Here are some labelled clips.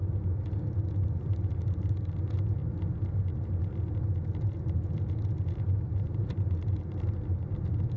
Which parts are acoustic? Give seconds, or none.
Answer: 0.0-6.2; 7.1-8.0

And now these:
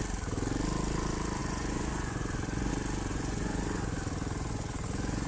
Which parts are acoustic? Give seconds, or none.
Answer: 0.0-1.4; 2.7-3.1

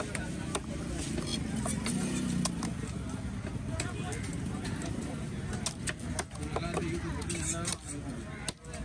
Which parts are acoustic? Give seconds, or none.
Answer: 0.0-4.3; 5.6-8.8